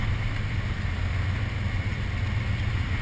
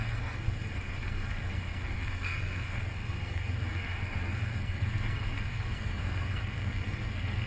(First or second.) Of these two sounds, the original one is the first